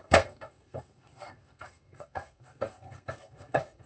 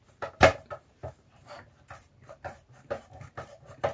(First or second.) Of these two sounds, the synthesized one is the first